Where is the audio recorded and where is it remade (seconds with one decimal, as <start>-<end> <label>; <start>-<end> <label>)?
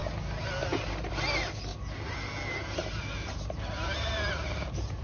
0.0-5.0 recorded